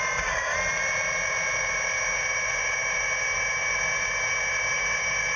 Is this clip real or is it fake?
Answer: fake